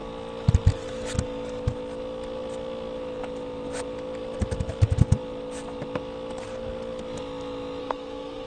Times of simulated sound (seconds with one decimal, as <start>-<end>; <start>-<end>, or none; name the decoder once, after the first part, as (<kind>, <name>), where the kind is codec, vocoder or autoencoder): 7.8-8.5 (codec, SNAC)